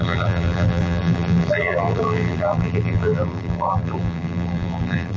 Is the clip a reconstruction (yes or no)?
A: yes